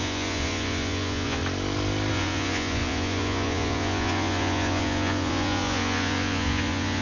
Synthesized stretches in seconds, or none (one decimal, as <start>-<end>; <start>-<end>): 0.0-1.4; 2.1-7.0